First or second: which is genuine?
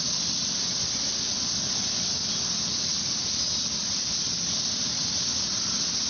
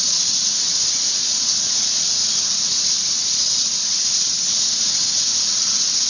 first